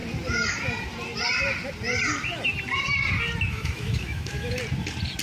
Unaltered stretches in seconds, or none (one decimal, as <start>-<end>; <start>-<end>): 0.0-3.5; 4.6-5.2